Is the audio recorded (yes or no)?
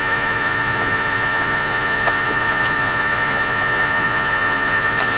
no